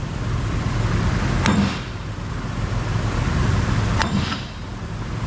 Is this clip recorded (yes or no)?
yes